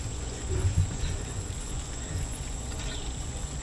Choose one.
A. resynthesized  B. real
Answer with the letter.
A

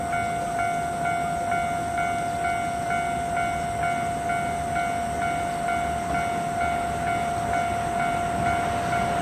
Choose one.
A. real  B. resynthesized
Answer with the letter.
A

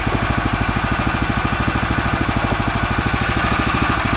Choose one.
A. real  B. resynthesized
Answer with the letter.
A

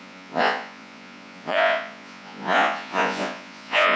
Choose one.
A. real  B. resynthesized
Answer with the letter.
B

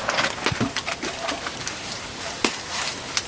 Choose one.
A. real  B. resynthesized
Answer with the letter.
A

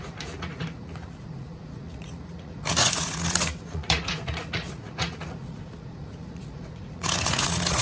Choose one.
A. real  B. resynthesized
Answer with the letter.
B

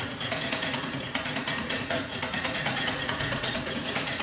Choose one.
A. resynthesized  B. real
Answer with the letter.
A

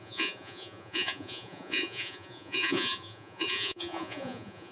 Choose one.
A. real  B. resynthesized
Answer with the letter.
B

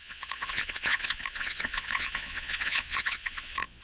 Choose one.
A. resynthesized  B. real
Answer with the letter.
A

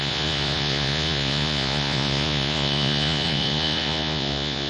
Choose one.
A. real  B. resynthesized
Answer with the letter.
B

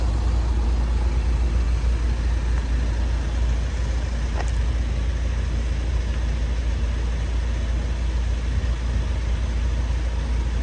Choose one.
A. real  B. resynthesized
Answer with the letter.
A